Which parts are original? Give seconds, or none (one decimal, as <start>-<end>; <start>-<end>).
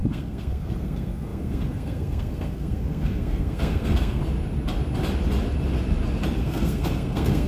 4.2-6.4